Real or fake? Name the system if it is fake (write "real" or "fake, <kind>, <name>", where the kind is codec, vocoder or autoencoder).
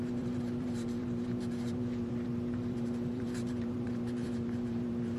fake, vocoder, BigVGAN v2